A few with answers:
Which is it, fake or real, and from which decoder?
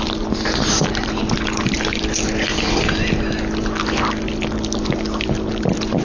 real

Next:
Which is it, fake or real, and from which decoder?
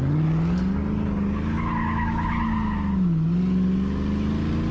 real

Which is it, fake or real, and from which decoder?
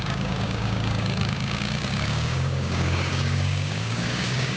fake, codec, DAC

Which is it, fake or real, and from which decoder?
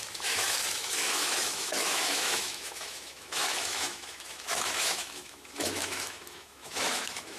fake, autoencoder, DAC-VAE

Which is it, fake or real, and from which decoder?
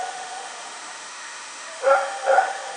fake, autoencoder, DAC-VAE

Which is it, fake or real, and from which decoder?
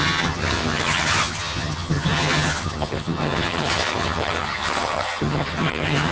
fake, vocoder, HiFi-GAN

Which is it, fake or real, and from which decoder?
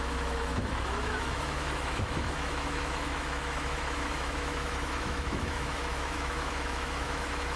fake, autoencoder, DAC-VAE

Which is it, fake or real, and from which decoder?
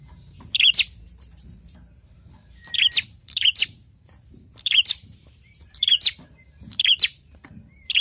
fake, vocoder, BigVGAN v2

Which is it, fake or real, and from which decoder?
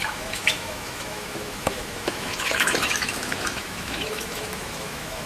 fake, autoencoder, DAC-VAE